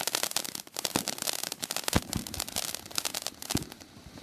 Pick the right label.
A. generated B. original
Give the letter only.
B